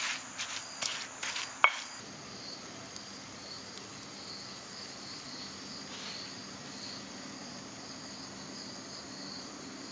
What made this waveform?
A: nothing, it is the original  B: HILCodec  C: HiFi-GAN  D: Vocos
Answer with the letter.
A